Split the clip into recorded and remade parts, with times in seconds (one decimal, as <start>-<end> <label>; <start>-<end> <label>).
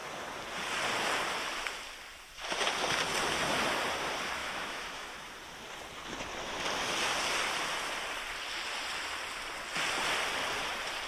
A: 0.0-4.4 recorded; 4.4-5.3 remade; 5.3-11.1 recorded